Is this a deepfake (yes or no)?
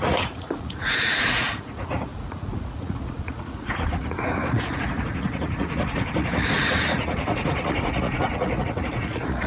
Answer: yes